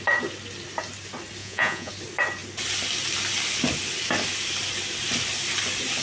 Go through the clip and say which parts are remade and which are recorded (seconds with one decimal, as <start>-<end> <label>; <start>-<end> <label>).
0.0-1.4 recorded; 1.4-1.9 remade; 1.9-6.0 recorded